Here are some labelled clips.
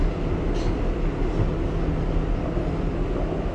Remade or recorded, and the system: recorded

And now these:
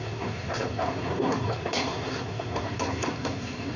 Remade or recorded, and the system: remade, codec, SNAC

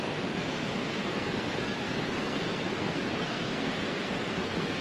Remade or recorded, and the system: remade, codec, SNAC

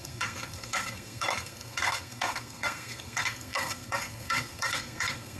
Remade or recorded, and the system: remade, codec, SNAC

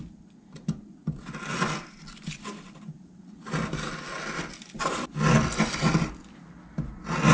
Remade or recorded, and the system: recorded